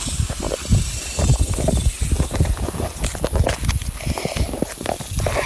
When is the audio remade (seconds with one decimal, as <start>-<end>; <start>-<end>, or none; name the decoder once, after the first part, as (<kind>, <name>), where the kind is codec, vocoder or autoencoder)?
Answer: none